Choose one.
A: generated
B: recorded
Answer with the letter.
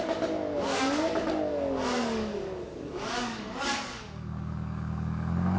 A